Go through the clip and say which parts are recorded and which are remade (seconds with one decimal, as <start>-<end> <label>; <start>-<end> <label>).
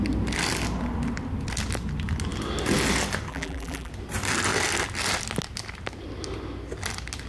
0.0-3.3 recorded; 3.3-3.9 remade; 3.9-7.3 recorded